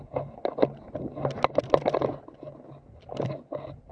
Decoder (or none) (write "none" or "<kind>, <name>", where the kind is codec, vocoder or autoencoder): none